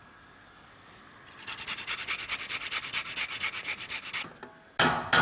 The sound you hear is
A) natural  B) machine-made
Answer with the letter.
A